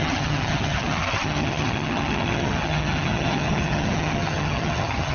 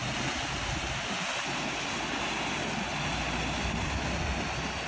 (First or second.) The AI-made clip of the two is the first